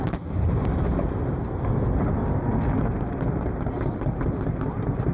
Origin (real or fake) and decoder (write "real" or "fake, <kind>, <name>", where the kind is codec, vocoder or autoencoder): real